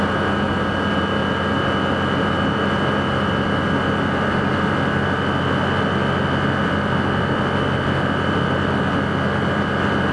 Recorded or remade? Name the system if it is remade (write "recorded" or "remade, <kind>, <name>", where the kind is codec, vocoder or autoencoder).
recorded